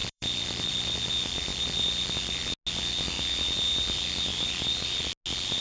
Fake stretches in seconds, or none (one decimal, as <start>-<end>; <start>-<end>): 0.0-0.9; 4.3-5.0